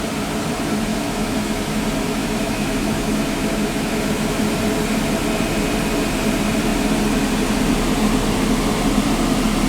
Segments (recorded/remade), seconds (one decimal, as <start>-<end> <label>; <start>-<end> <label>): 0.0-0.9 recorded; 0.9-1.8 remade; 1.8-2.2 recorded; 2.2-4.4 remade; 4.4-9.7 recorded